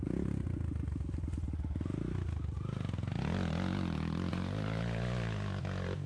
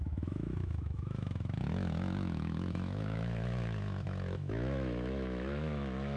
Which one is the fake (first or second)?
second